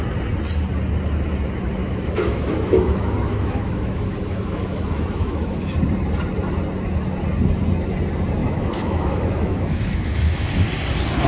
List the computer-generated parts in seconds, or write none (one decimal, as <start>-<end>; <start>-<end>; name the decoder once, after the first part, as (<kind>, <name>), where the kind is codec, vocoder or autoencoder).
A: 1.8-5.7 (autoencoder, DAC-VAE); 8.4-10.5